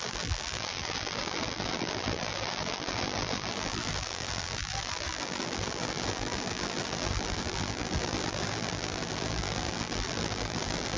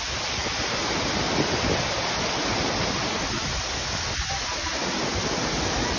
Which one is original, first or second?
second